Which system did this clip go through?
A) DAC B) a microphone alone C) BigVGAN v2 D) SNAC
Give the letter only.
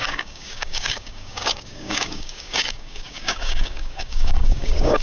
A